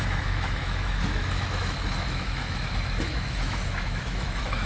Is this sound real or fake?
fake